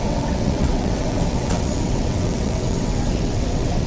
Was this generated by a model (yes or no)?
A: yes